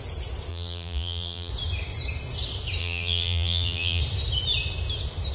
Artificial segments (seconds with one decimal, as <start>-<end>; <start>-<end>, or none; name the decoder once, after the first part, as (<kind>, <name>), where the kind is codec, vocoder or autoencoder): 0.5-1.5 (vocoder, BigVGAN v2); 2.8-4.0